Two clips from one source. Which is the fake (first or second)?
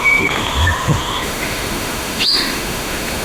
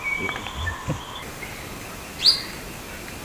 first